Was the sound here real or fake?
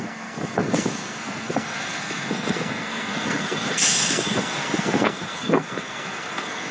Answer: fake